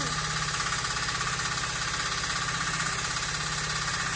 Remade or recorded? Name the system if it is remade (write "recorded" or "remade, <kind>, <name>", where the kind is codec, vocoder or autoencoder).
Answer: recorded